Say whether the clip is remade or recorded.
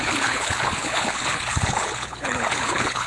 remade